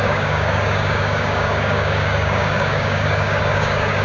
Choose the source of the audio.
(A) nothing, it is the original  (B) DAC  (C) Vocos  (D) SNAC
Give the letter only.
B